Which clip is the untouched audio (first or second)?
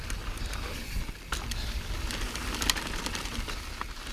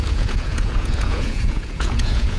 first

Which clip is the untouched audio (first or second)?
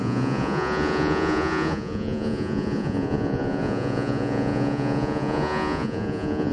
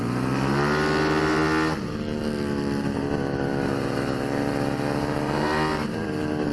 second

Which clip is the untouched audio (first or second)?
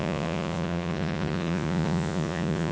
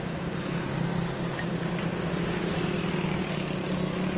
second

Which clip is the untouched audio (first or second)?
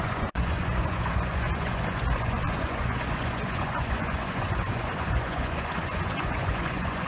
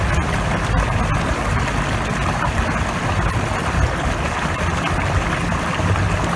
second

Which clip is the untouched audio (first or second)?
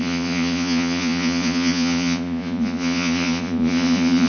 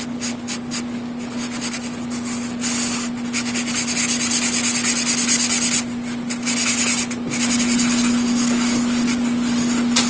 second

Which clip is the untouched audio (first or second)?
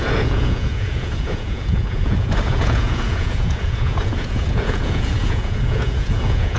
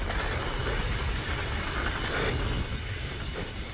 second